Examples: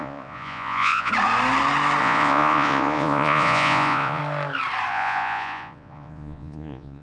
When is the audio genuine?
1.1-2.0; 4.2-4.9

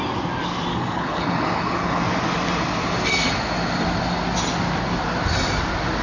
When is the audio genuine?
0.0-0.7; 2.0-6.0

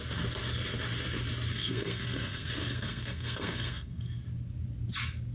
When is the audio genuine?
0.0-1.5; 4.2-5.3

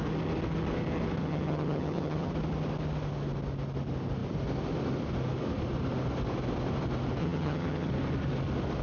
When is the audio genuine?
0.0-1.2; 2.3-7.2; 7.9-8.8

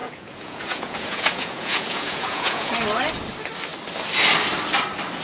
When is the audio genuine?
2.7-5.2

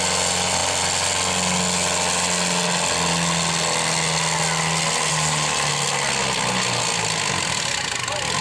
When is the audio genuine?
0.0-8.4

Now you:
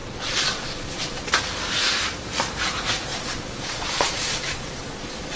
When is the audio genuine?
1.3-3.1

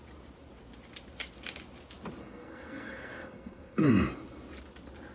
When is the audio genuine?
0.0-2.2; 3.9-5.1